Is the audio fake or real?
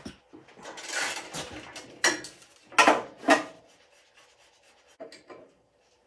real